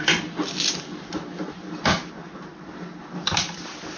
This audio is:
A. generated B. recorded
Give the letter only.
B